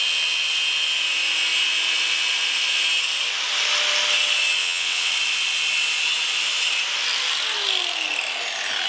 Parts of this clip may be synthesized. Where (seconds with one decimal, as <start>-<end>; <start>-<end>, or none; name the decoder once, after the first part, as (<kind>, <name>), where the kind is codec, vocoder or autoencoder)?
4.6-5.1 (vocoder, WaveNeXt)